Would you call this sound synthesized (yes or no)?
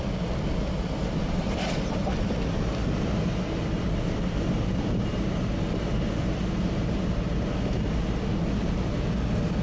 no